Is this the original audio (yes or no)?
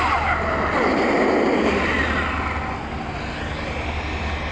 yes